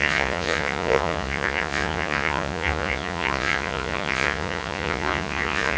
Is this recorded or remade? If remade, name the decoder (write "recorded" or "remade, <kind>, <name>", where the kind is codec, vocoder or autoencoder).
remade, vocoder, Vocos